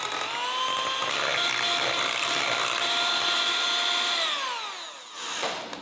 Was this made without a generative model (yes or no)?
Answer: yes